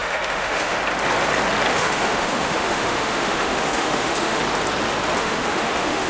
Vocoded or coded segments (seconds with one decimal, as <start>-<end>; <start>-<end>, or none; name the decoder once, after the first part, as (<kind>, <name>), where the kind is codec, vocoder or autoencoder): 0.0-0.8 (autoencoder, DAC-VAE); 1.7-4.4; 5.2-6.1